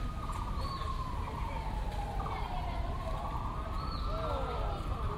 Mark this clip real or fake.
fake